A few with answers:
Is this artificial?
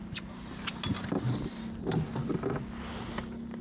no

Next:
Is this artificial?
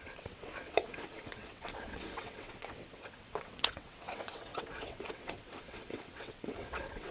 yes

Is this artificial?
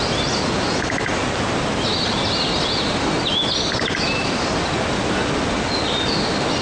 no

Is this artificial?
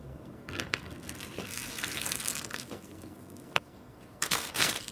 yes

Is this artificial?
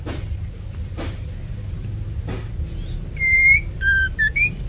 no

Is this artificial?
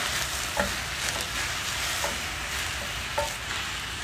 no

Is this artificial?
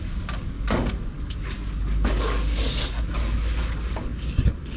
yes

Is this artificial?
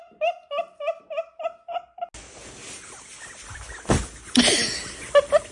no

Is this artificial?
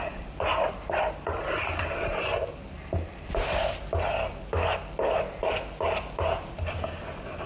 no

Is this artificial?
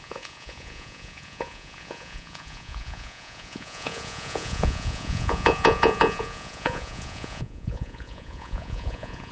yes